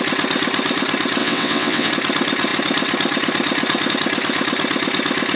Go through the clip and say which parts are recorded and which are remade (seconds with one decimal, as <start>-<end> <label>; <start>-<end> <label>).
0.0-1.2 recorded; 1.2-1.9 remade; 1.9-5.4 recorded